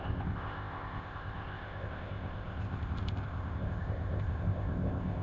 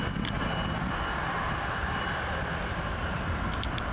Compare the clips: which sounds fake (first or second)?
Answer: first